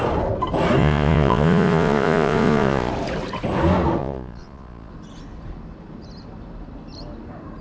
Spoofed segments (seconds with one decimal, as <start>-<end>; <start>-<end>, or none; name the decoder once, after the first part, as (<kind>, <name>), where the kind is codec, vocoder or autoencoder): 0.8-2.9 (vocoder, Vocos); 4.0-4.9